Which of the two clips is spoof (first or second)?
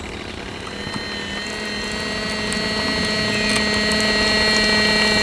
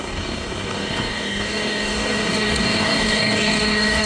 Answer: second